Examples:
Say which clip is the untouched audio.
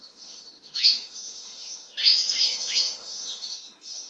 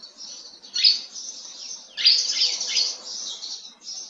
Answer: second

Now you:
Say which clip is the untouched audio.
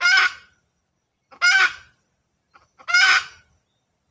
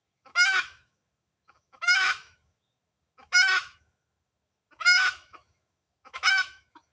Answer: first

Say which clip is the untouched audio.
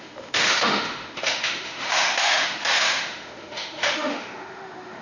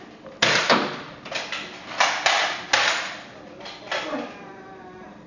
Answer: second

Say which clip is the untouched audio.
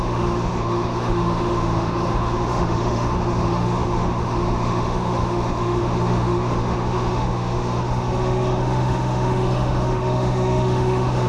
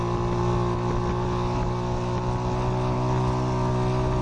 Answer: second